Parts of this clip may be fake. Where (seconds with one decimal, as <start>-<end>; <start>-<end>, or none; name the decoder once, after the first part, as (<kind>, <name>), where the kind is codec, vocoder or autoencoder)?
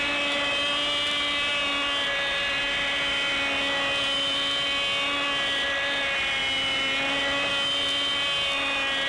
none